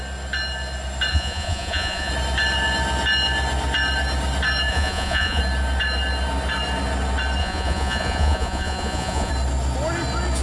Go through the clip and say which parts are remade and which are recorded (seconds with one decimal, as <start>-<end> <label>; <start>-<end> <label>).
0.0-1.1 recorded; 1.1-2.1 remade; 2.1-4.7 recorded; 4.7-5.4 remade; 5.4-7.4 recorded; 7.4-9.3 remade; 9.3-10.4 recorded